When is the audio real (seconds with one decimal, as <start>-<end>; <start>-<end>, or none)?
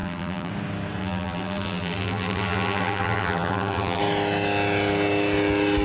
0.5-1.0; 4.0-5.8